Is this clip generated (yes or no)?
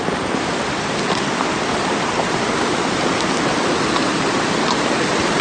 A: no